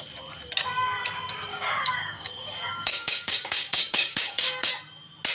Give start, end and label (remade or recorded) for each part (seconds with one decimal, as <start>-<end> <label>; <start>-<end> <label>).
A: 0.0-1.5 recorded; 1.5-4.7 remade; 4.7-5.3 recorded